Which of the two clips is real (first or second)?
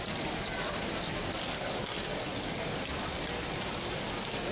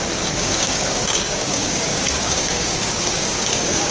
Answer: first